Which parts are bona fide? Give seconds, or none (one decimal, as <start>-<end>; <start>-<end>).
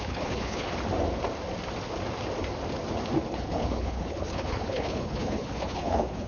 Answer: 0.7-3.3